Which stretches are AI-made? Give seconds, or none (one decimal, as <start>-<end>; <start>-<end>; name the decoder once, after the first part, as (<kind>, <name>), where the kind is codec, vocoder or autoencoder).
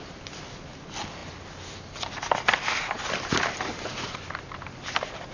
none